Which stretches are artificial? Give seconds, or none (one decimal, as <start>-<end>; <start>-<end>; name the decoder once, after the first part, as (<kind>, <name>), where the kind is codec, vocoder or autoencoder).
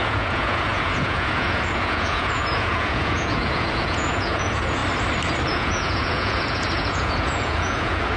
0.0-4.8 (vocoder, Vocos); 5.5-8.2